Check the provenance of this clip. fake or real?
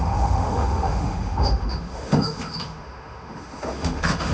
fake